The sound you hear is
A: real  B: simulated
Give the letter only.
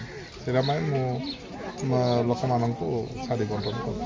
A